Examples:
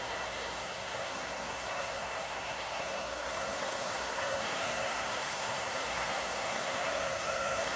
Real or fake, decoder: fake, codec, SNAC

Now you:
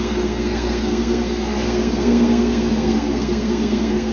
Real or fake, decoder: fake, codec, SNAC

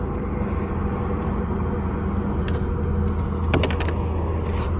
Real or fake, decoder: real